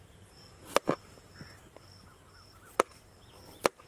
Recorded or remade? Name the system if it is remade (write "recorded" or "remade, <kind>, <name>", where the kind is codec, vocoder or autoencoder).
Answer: recorded